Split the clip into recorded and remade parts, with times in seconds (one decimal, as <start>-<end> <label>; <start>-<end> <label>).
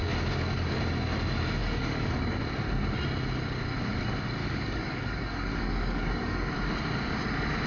0.0-0.8 remade; 0.8-1.6 recorded; 1.6-2.4 remade; 2.4-4.4 recorded; 4.4-6.5 remade; 6.5-7.7 recorded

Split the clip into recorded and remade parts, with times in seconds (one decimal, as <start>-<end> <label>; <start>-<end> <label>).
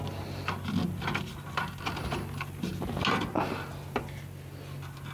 0.0-5.1 recorded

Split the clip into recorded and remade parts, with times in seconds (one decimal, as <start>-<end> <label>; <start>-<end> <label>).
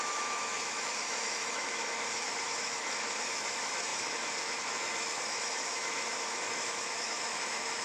0.0-7.8 remade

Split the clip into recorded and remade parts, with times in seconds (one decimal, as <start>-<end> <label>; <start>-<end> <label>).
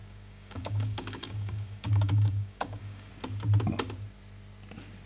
0.0-3.1 remade; 3.1-5.1 recorded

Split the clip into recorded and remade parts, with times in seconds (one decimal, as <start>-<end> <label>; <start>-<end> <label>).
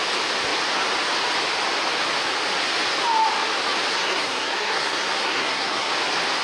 0.0-3.9 recorded; 3.9-5.9 remade; 5.9-6.4 recorded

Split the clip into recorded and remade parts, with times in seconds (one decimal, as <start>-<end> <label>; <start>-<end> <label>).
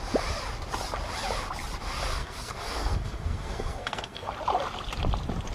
0.0-2.1 recorded; 2.1-4.3 remade; 4.3-5.5 recorded